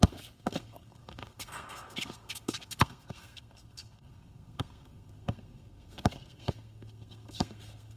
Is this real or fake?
fake